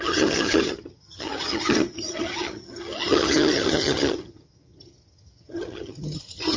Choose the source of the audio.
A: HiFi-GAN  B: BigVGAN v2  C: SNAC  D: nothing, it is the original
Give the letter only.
A